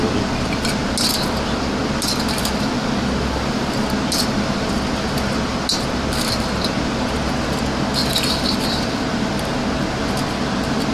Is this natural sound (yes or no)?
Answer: yes